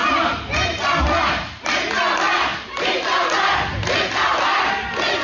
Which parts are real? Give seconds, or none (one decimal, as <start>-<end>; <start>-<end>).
0.0-5.2